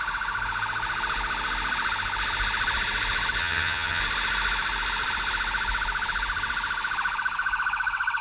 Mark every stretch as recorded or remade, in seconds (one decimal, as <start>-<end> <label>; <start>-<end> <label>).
0.0-3.4 recorded; 3.4-4.0 remade; 4.0-8.2 recorded